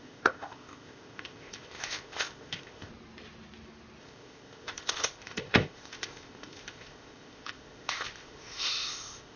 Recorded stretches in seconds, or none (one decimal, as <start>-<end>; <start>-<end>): 2.9-4.0